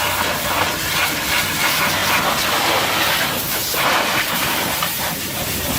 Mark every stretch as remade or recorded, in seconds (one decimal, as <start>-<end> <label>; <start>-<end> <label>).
0.0-5.8 recorded